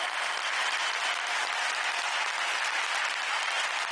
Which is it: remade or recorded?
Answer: recorded